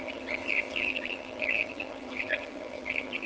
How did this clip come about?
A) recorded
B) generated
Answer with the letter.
B